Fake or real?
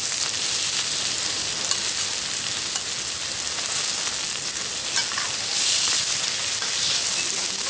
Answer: real